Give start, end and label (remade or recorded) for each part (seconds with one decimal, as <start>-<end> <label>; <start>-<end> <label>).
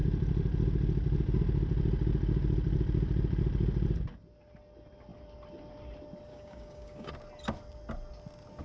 0.0-6.3 recorded; 6.3-7.1 remade; 7.1-8.6 recorded